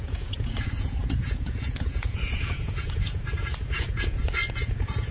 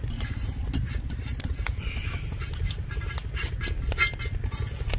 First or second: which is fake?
first